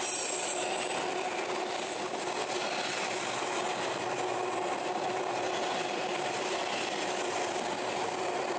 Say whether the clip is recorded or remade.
recorded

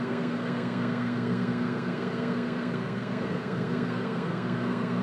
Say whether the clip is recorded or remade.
remade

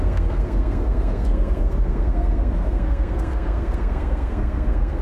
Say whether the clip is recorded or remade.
remade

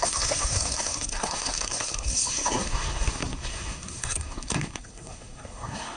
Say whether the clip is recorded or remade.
remade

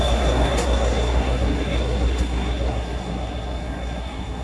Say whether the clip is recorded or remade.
remade